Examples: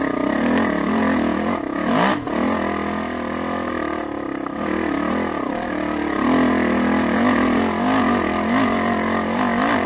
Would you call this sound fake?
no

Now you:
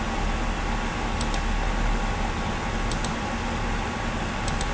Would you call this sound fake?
no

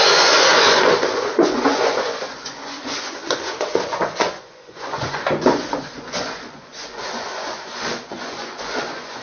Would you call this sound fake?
yes